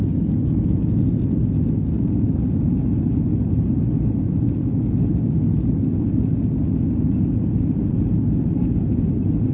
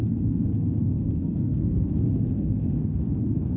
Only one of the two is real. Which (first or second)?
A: first